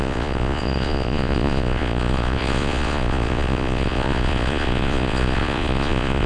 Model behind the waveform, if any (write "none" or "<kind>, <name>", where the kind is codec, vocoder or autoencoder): vocoder, Vocos